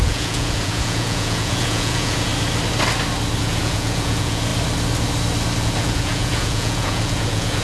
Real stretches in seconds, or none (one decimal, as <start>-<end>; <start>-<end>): 2.3-3.4; 4.5-5.6